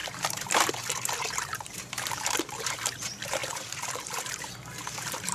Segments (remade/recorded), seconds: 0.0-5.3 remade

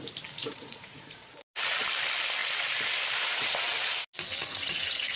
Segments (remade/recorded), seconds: 0.0-0.4 recorded; 0.4-1.3 remade; 1.3-4.4 recorded; 4.4-5.2 remade